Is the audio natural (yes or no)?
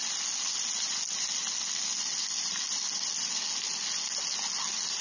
yes